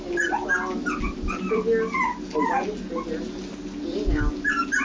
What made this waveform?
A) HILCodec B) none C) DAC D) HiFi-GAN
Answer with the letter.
B